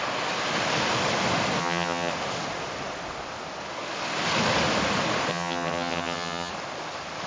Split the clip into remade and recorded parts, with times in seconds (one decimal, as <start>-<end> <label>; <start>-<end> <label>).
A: 0.0-1.6 recorded; 1.6-2.1 remade; 2.1-5.3 recorded; 5.3-6.5 remade; 6.5-7.3 recorded